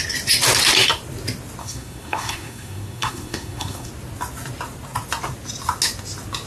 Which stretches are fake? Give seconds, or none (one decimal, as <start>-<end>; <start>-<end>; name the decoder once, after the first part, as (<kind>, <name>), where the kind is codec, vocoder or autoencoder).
1.6-3.9 (codec, SNAC)